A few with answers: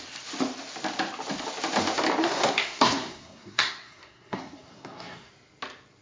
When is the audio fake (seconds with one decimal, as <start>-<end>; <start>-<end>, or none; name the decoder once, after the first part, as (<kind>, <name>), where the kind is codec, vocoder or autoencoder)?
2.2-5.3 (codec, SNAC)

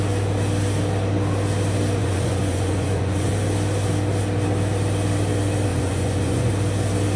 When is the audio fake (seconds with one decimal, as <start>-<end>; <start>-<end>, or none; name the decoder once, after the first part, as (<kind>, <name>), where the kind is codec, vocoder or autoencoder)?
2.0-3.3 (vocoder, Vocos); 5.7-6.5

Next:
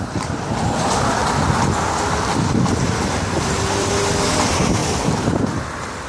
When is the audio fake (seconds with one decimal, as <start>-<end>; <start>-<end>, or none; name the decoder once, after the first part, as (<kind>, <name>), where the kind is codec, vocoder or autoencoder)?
0.0-1.2 (vocoder, BigVGAN v2); 3.8-6.1